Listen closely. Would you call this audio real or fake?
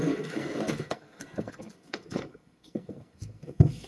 fake